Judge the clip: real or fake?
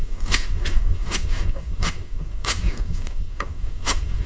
fake